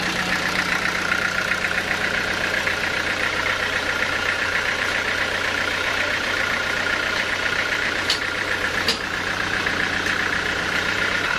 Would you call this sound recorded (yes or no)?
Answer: no